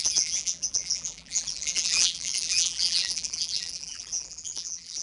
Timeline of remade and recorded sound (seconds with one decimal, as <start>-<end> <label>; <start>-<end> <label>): 0.0-5.0 remade